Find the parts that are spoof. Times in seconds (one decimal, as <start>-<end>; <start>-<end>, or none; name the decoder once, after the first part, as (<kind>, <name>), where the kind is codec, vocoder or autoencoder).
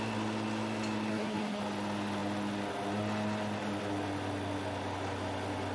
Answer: 1.1-1.6 (codec, SNAC)